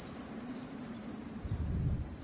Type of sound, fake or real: fake